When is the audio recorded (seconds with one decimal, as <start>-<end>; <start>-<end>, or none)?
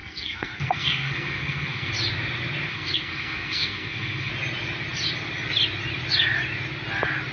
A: 1.9-2.7; 4.3-7.3